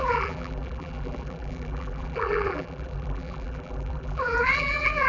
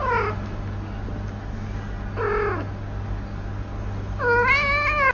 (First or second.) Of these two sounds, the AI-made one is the first